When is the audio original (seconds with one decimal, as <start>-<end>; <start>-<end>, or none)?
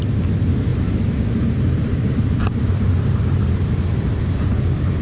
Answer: 0.0-0.7; 3.7-5.0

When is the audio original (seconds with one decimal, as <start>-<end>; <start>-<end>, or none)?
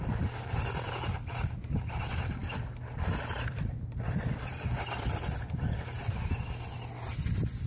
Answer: 0.0-2.4; 5.4-7.7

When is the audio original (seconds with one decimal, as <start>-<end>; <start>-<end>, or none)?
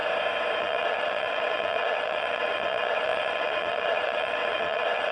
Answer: 0.0-0.6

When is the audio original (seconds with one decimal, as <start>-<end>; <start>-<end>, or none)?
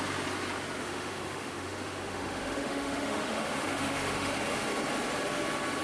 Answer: 0.0-0.8; 4.3-5.8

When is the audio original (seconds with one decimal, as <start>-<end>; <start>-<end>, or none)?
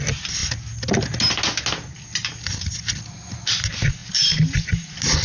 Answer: 0.0-5.2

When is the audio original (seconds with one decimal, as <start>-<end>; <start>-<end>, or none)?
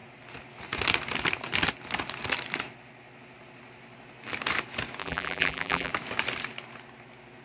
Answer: 0.0-5.0; 5.9-7.4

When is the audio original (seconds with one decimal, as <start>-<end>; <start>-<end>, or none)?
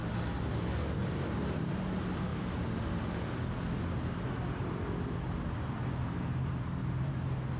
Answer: 0.0-1.0; 2.3-5.5